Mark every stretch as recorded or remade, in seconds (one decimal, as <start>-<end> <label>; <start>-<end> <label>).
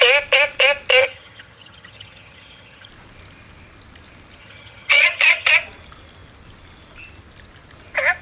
0.0-1.0 recorded; 1.0-2.9 remade; 2.9-4.4 recorded; 4.4-5.5 remade; 5.5-8.2 recorded